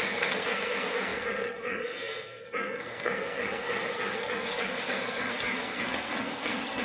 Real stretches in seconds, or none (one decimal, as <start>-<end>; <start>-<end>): none